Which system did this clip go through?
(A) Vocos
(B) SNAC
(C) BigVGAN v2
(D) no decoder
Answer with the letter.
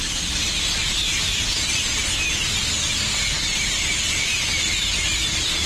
D